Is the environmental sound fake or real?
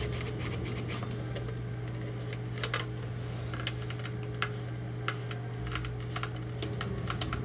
real